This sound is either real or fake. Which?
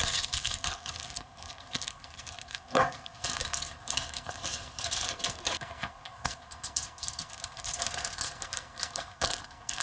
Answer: fake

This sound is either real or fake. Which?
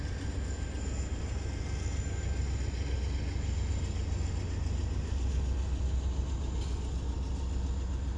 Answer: real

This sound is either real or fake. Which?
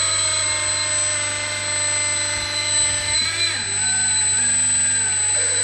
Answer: real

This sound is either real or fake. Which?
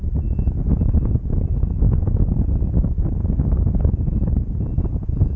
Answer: real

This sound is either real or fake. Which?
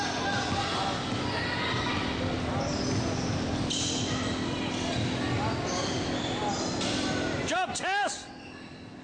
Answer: real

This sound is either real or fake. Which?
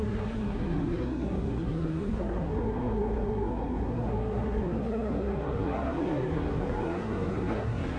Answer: fake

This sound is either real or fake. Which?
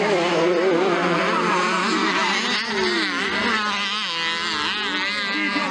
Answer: real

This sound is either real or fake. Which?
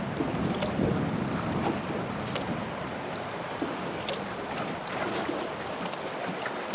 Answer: real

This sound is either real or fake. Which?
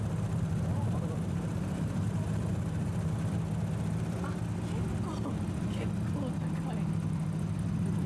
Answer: real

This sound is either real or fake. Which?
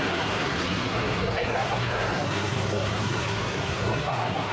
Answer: fake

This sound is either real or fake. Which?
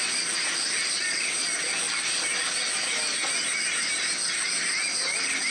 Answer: real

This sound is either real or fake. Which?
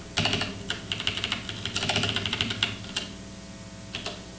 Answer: real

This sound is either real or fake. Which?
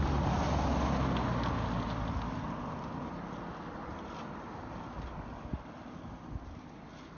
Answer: real